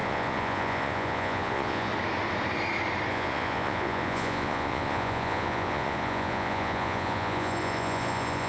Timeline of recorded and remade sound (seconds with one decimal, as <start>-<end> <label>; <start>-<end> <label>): 0.0-1.9 remade; 1.9-3.1 recorded; 3.1-8.5 remade